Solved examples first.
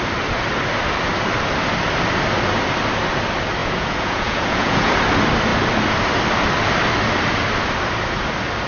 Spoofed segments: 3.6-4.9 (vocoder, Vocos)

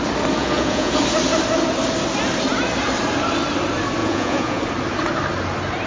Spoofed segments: 0.4-0.9 (vocoder, Vocos); 4.0-4.6

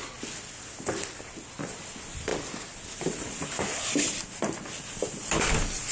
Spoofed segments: none

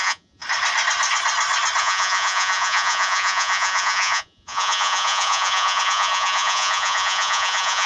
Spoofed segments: 0.0-0.4 (vocoder, Vocos); 1.8-7.9